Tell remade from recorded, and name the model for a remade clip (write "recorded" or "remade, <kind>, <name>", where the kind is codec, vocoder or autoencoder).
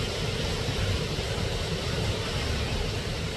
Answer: recorded